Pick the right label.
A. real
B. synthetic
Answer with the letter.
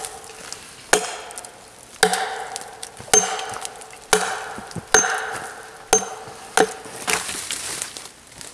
A